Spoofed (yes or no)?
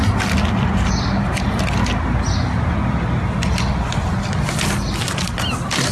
no